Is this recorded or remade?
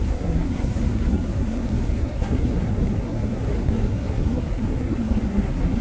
remade